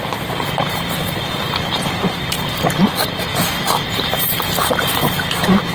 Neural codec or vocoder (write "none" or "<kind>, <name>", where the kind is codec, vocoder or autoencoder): none